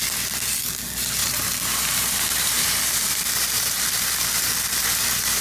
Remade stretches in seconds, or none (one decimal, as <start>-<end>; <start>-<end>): 1.2-2.8; 4.8-5.4